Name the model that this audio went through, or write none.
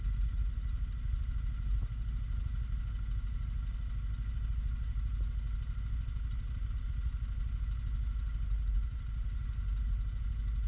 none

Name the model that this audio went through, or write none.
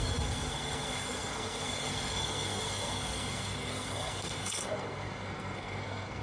codec, SNAC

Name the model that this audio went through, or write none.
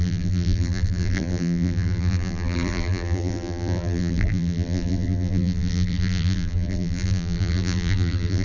vocoder, BigVGAN v2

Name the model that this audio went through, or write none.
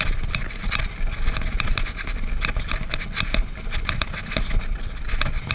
none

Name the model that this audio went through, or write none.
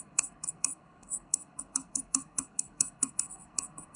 codec, SNAC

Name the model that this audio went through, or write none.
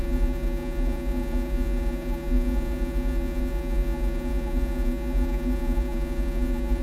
vocoder, Vocos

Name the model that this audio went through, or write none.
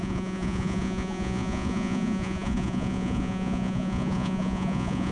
vocoder, Vocos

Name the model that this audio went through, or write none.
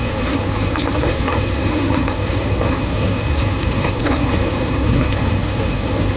codec, SNAC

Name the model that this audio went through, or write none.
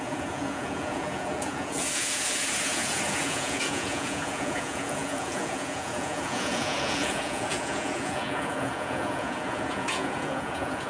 vocoder, Vocos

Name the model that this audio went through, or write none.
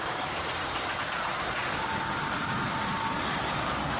none